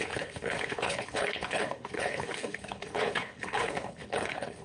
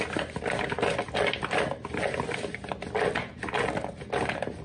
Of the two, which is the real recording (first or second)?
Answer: second